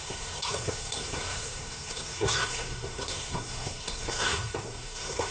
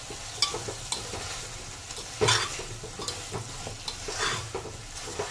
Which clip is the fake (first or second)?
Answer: first